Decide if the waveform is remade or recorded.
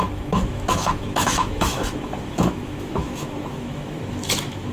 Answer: remade